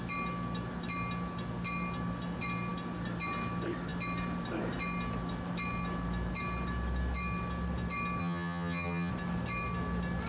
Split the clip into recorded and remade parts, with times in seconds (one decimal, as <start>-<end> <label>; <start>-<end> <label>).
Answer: 0.0-8.2 recorded; 8.2-9.1 remade; 9.1-10.3 recorded